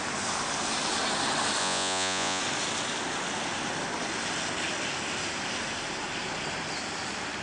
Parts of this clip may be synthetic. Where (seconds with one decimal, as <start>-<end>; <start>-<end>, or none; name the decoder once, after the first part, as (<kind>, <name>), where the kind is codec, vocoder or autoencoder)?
1.6-2.4 (vocoder, Vocos)